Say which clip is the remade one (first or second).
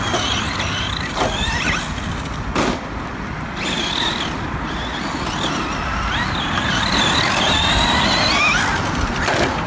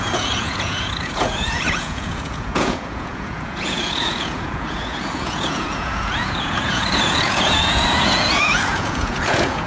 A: second